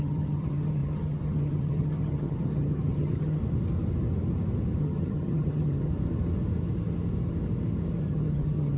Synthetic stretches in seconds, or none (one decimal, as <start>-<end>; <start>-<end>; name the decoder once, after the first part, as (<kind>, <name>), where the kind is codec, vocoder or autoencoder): 0.0-3.4 (vocoder, HiFi-GAN); 4.8-5.9; 8.0-8.8